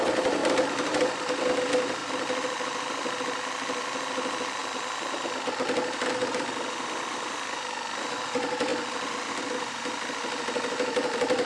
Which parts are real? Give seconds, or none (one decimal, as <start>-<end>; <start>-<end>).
2.0-2.9; 4.6-6.1; 8.7-9.3